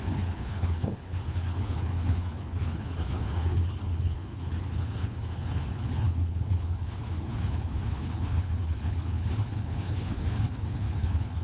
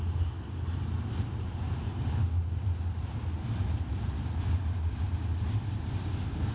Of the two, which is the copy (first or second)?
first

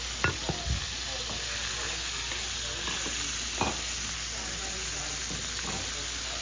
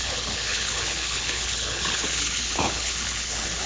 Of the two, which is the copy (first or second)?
second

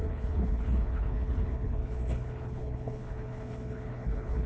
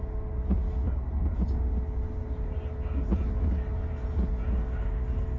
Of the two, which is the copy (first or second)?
first